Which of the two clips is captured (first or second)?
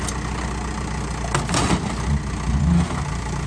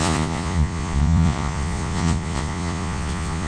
first